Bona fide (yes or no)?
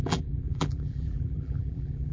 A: no